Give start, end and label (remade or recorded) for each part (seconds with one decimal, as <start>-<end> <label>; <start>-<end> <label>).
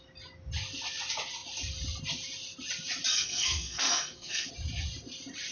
0.0-3.1 recorded; 3.1-4.5 remade; 4.5-5.5 recorded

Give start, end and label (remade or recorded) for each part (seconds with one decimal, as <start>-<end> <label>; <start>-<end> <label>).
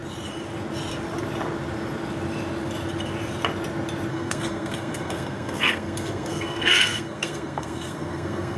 0.0-4.1 recorded; 4.1-8.6 remade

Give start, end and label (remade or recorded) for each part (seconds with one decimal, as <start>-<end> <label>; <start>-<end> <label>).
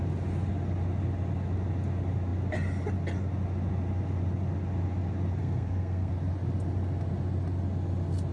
0.0-5.4 recorded; 5.4-6.1 remade; 6.1-8.3 recorded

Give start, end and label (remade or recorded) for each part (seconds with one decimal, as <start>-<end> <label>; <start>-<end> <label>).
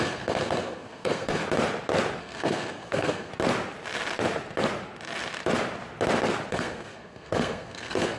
0.0-1.4 remade; 1.4-2.2 recorded; 2.2-3.3 remade; 3.3-6.5 recorded; 6.5-8.2 remade